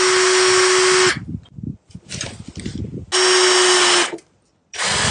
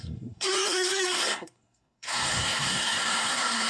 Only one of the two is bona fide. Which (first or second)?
first